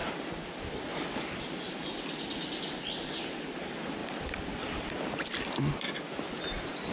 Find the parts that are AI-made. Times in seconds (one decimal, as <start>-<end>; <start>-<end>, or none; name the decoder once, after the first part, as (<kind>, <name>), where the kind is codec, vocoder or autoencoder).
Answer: 4.0-5.6 (vocoder, BigVGAN v2)